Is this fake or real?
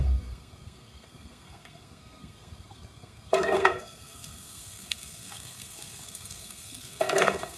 fake